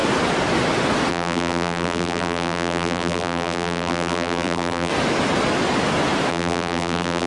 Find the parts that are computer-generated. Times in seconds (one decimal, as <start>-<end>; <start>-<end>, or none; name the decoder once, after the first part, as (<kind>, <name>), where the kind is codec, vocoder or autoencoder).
1.1-4.9 (vocoder, BigVGAN v2); 6.3-7.3